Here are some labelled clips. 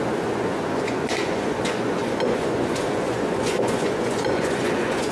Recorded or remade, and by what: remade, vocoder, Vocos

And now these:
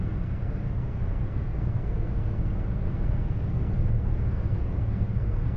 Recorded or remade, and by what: remade, codec, SNAC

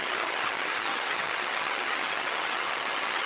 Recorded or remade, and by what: remade, vocoder, HiFi-GAN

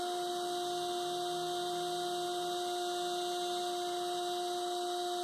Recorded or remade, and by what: recorded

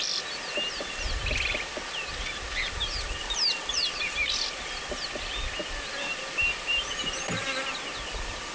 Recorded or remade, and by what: recorded